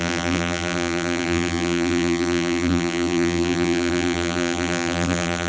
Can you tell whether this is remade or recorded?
remade